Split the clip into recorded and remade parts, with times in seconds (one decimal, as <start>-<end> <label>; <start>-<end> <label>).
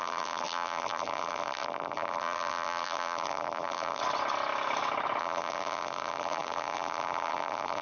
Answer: 0.0-4.0 remade; 4.0-5.2 recorded; 5.2-7.8 remade